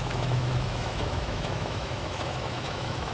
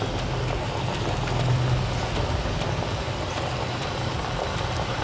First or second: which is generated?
first